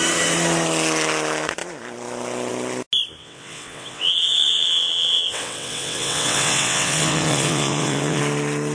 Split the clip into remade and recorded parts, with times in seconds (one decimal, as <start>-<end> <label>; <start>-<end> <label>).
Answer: 0.0-3.2 recorded; 3.2-8.2 remade; 8.2-8.7 recorded